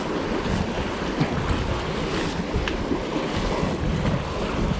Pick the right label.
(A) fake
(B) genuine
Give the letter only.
B